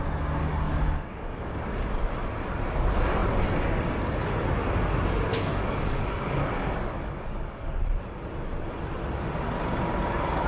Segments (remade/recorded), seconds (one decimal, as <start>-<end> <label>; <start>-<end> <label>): 0.0-0.4 recorded; 0.4-1.6 remade; 1.6-5.3 recorded; 5.3-7.8 remade; 7.8-10.5 recorded